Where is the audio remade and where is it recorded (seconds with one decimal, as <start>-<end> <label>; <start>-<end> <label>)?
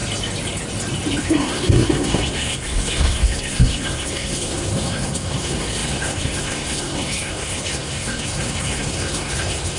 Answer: 0.0-1.2 recorded; 1.2-9.8 remade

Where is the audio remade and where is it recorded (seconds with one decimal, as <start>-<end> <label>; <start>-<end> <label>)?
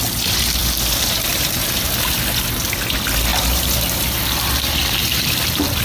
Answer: 0.0-5.8 recorded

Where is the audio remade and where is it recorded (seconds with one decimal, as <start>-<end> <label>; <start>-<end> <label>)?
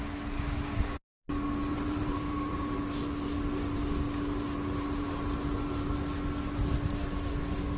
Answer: 0.0-1.7 recorded; 1.7-2.8 remade; 2.8-7.8 recorded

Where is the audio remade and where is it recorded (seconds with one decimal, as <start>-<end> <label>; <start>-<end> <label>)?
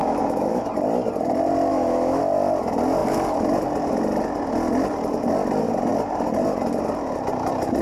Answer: 0.0-0.7 remade; 0.7-1.7 recorded; 1.7-2.2 remade; 2.2-7.8 recorded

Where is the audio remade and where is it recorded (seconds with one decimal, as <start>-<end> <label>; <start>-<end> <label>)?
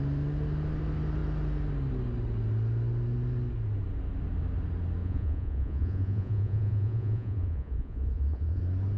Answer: 0.0-5.0 recorded; 5.0-8.6 remade; 8.6-9.0 recorded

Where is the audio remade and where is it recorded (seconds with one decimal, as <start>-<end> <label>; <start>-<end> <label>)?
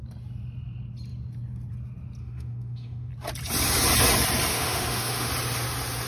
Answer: 0.0-2.2 recorded; 2.2-3.1 remade; 3.1-4.5 recorded; 4.5-5.3 remade; 5.3-6.1 recorded